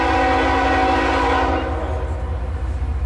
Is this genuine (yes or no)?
yes